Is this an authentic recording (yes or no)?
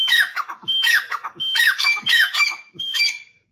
no